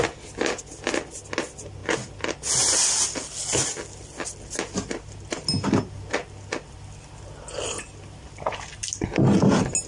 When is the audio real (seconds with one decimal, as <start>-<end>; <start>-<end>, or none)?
0.0-9.9